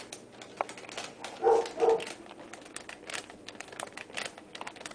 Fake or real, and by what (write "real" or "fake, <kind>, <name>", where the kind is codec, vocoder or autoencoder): real